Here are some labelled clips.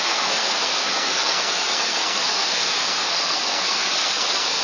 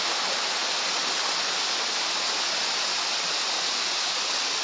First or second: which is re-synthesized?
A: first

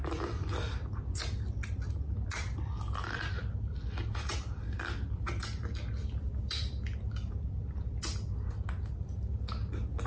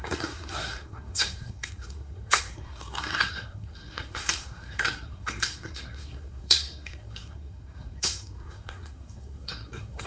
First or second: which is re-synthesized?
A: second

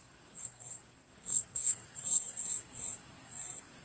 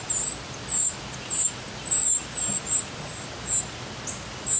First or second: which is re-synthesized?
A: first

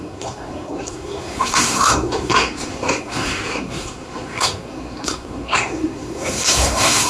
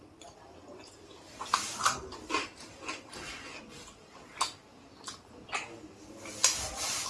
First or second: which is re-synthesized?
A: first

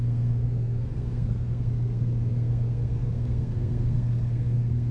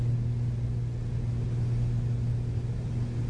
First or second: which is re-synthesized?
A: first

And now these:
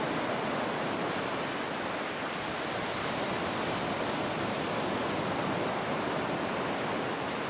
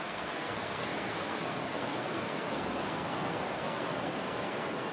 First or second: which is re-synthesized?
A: second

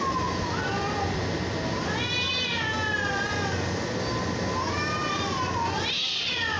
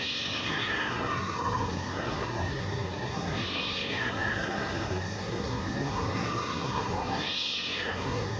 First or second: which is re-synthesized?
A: second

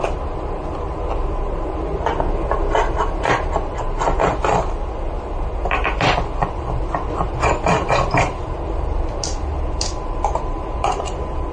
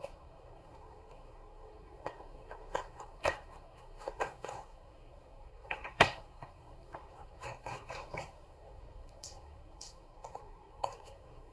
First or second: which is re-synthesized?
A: second